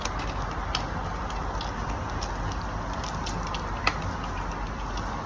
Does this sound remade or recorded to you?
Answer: recorded